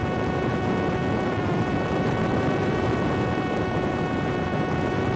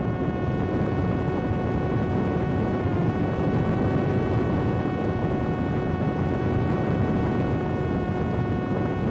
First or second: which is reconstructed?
first